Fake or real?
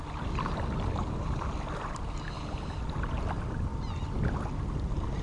real